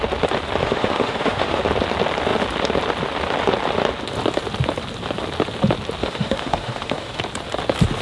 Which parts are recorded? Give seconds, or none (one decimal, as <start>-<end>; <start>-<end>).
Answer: 0.0-0.6; 1.6-6.0; 7.2-8.0